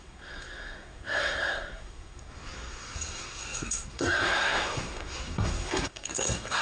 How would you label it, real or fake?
fake